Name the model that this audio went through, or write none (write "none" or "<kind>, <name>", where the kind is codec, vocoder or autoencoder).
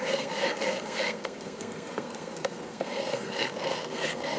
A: codec, SNAC